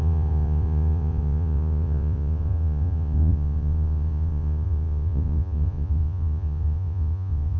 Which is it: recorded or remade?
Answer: remade